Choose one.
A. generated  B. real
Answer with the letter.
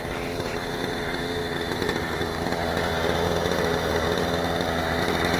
B